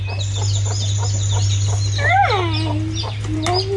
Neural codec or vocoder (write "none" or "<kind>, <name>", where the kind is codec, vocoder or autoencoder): none